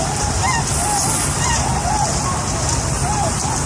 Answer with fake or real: real